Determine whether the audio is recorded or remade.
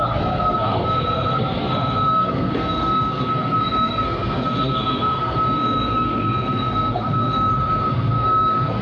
remade